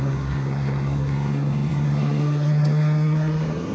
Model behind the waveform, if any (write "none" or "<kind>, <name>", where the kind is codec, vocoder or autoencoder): codec, SNAC